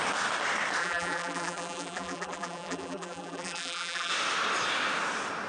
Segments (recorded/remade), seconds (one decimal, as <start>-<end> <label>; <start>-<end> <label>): 0.0-0.8 recorded; 0.8-4.1 remade; 4.1-5.5 recorded